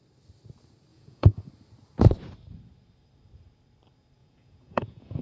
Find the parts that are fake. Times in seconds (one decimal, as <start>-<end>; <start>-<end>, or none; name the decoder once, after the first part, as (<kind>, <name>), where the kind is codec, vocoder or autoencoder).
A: 0.9-1.5 (vocoder, Vocos); 4.2-5.2